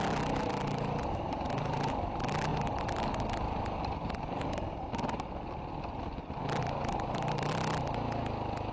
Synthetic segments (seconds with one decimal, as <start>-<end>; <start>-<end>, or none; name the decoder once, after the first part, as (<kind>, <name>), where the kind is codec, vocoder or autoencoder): 2.5-6.0 (vocoder, BigVGAN v2); 6.8-7.5